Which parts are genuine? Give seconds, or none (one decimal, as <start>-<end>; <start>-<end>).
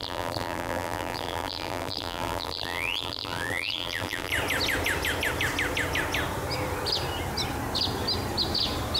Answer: 4.3-9.0